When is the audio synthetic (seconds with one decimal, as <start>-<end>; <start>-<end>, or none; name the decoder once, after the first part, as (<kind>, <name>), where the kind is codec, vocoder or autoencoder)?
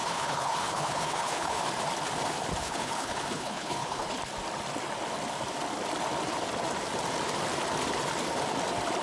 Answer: 0.0-1.6 (codec, HILCodec); 2.6-4.2